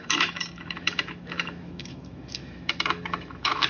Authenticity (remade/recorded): remade